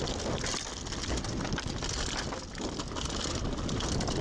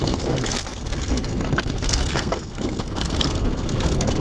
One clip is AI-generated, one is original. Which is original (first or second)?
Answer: first